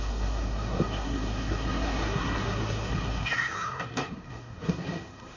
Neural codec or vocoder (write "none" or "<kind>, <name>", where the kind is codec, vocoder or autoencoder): codec, SNAC